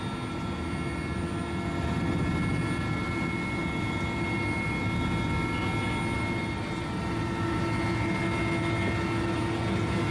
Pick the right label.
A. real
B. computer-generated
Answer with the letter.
A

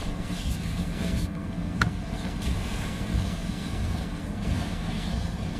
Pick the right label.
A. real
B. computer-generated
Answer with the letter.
B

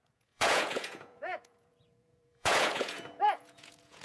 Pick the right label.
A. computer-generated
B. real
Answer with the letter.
A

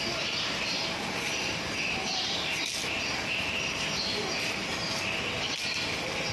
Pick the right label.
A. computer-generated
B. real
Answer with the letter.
B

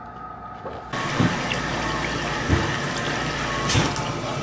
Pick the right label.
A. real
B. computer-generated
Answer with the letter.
A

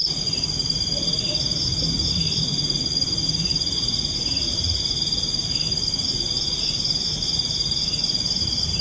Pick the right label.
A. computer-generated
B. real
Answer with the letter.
A